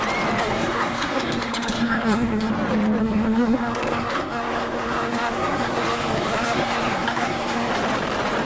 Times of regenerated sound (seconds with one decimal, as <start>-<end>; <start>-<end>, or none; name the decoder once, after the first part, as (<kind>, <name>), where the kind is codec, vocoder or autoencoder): 0.4-2.5 (codec, SNAC); 3.0-7.7